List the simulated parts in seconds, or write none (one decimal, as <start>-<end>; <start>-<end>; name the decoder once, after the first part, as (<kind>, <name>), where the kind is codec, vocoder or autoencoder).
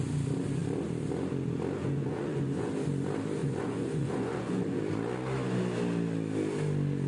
1.8-2.7 (vocoder, Vocos); 3.4-4.8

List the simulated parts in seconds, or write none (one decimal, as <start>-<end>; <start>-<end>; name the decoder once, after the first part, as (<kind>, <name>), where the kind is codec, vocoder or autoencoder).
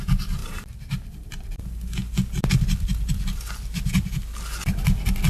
0.4-1.6 (vocoder, BigVGAN v2)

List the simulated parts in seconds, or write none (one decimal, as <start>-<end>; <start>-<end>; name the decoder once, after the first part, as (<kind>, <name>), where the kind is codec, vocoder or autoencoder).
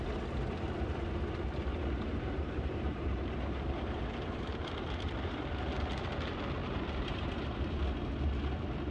2.1-5.4 (vocoder, BigVGAN v2); 6.6-7.8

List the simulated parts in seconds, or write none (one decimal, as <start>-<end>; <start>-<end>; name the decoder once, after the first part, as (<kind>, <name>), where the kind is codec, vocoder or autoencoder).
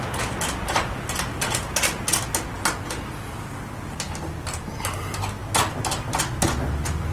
none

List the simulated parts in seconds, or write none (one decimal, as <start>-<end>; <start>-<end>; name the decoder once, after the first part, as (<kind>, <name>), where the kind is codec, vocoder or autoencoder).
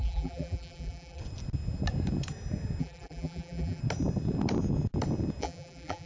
0.0-1.2 (vocoder, BigVGAN v2); 2.8-3.8; 5.4-6.1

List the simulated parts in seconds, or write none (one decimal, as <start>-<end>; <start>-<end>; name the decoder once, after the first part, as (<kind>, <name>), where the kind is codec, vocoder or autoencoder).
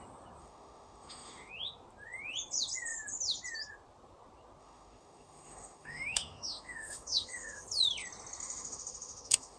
0.4-1.5 (autoencoder, DAC-VAE); 4.6-7.6; 8.4-9.6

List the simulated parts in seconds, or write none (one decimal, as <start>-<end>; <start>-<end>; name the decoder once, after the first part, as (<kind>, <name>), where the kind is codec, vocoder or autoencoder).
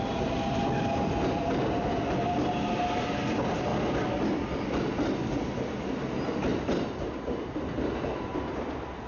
none